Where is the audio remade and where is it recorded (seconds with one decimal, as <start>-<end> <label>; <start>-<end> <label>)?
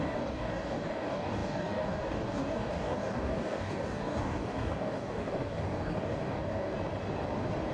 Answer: 0.0-6.7 remade; 6.7-7.7 recorded